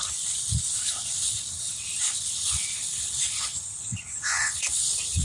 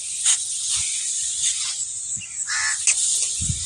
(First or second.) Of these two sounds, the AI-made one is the first